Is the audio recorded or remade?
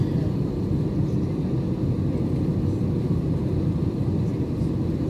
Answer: recorded